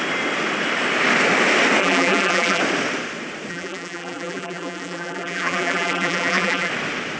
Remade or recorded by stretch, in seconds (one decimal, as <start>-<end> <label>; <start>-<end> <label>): 0.0-1.8 recorded; 1.8-2.6 remade; 2.6-3.5 recorded; 3.5-6.7 remade; 6.7-7.2 recorded